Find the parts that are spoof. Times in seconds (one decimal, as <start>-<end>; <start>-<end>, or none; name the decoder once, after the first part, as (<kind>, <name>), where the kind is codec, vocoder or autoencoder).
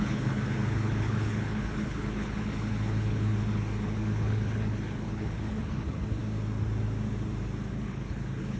0.0-6.2 (codec, HILCodec); 7.7-8.6